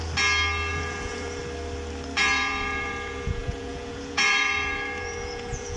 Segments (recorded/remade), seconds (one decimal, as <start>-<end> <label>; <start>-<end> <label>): 0.0-0.7 recorded; 0.7-1.4 remade; 1.4-2.2 recorded; 2.2-5.8 remade